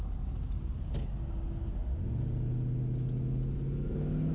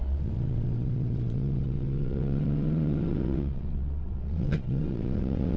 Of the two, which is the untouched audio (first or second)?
first